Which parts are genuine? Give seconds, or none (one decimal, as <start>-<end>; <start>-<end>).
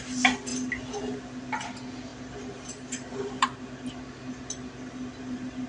0.0-5.7